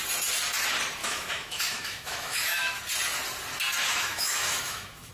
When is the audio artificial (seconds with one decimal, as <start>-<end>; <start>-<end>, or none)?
1.0-2.8; 3.9-5.1